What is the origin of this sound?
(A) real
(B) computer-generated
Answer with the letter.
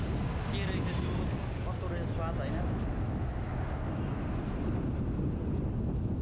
A